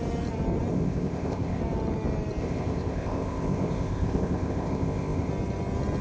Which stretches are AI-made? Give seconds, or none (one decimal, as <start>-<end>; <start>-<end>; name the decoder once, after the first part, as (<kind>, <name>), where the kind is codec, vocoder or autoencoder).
0.7-1.6 (codec, ZipCodec); 2.4-5.3